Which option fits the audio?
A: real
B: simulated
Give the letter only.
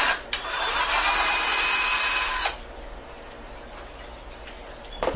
A